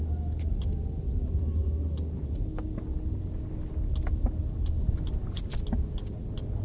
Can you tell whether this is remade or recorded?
recorded